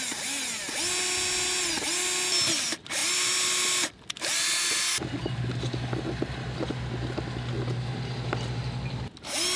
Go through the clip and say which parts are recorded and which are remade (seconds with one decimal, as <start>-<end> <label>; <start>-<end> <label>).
0.0-9.6 recorded